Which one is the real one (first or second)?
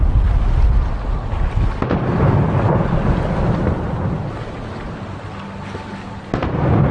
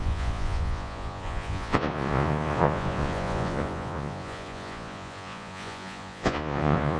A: first